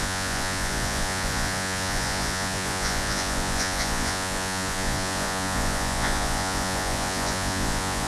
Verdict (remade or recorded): remade